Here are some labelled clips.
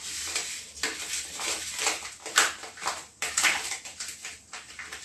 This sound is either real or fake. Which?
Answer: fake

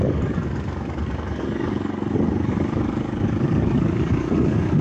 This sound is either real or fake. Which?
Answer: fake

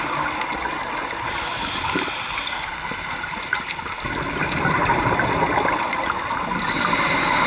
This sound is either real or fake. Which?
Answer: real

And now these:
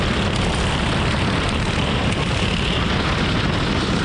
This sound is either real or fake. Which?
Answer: real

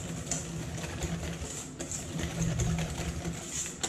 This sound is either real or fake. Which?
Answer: real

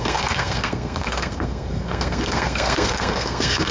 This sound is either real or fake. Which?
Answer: fake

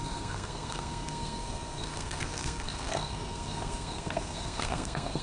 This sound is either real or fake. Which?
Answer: fake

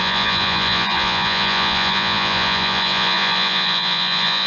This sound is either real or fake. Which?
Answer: fake